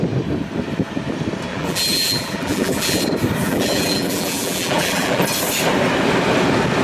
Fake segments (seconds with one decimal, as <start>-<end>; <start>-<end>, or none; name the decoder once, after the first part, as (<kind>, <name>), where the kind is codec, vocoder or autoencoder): 1.5-3.0 (vocoder, BigVGAN v2); 3.4-5.2